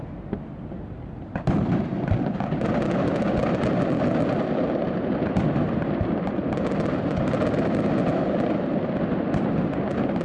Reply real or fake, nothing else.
real